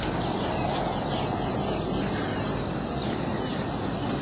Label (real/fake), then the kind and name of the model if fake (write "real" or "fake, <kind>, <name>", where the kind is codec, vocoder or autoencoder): real